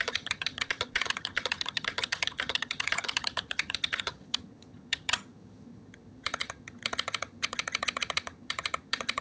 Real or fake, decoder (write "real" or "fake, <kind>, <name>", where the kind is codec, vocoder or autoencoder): fake, vocoder, HiFi-GAN